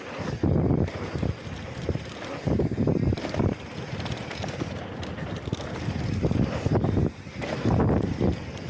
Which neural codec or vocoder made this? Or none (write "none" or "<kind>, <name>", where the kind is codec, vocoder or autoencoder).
none